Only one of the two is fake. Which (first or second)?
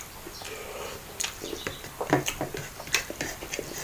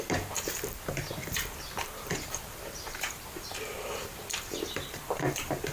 second